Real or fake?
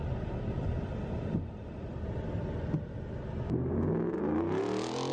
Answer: real